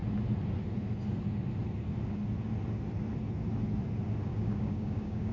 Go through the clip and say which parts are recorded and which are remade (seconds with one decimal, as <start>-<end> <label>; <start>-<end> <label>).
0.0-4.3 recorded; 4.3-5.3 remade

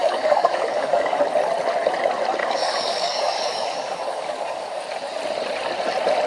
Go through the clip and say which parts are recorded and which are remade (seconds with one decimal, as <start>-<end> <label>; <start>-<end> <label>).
0.0-1.2 remade; 1.2-2.4 recorded; 2.4-4.8 remade; 4.8-6.3 recorded

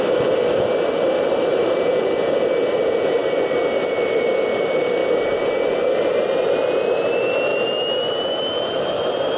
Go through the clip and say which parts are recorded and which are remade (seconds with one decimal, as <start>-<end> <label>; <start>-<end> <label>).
0.0-9.4 recorded

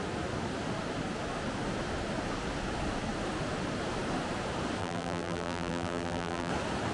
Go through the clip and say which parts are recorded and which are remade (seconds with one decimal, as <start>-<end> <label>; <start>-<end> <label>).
0.0-4.8 recorded; 4.8-6.5 remade; 6.5-6.9 recorded

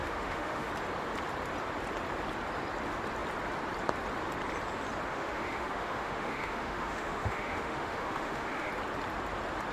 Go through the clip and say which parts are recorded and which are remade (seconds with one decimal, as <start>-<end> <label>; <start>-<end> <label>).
0.0-0.7 remade; 0.7-5.1 recorded; 5.1-8.7 remade; 8.7-9.7 recorded

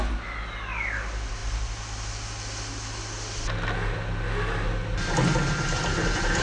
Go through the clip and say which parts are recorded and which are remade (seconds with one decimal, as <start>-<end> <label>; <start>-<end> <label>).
0.0-6.4 recorded

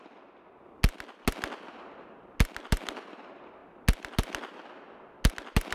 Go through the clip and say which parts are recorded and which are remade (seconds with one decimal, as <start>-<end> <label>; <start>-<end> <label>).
0.0-5.7 recorded